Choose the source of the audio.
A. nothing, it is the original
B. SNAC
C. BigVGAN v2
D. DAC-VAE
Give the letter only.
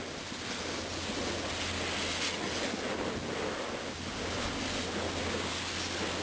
A